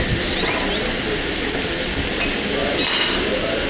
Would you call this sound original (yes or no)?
yes